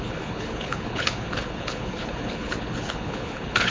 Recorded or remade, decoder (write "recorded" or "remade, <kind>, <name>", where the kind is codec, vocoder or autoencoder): remade, codec, HILCodec